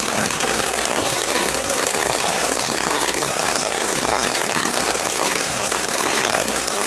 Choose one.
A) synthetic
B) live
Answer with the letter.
A